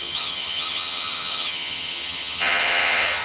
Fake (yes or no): yes